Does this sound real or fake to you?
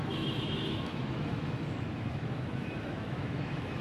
fake